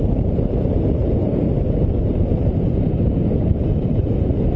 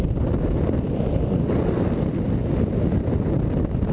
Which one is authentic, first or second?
second